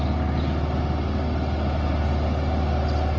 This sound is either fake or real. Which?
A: real